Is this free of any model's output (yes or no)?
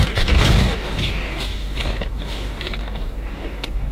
no